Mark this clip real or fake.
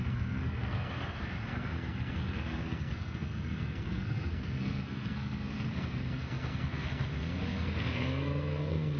fake